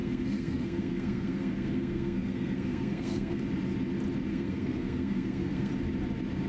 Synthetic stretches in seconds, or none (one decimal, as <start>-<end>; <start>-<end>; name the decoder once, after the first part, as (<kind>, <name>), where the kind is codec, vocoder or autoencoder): 0.0-3.4 (codec, SNAC); 4.3-5.7

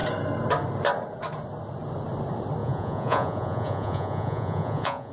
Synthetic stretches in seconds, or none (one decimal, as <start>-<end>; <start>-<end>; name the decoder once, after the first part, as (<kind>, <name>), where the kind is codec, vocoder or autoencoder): 2.6-5.1 (vocoder, Vocos)